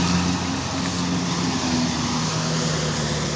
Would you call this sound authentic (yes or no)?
yes